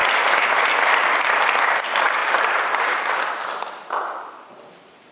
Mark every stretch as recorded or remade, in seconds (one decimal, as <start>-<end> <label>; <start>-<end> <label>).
0.0-2.2 recorded; 2.2-3.2 remade; 3.2-5.1 recorded